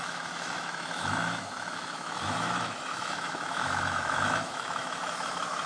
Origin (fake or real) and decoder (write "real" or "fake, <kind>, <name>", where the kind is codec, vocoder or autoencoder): fake, autoencoder, DAC-VAE